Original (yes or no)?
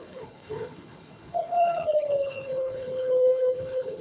no